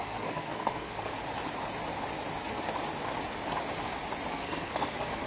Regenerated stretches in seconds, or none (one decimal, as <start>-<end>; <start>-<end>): 0.0-1.1; 4.3-5.3